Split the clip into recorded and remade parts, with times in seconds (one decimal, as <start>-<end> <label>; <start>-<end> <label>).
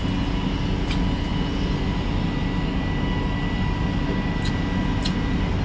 0.0-5.6 recorded